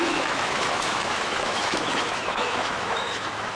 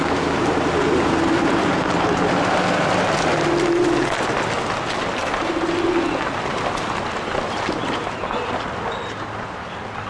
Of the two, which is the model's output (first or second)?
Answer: first